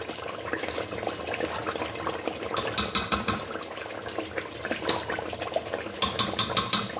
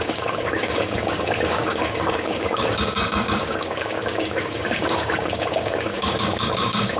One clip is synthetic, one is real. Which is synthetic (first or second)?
second